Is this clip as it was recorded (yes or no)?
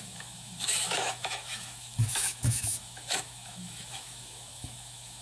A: no